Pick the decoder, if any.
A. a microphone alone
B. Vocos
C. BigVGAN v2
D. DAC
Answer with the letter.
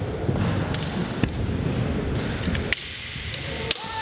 C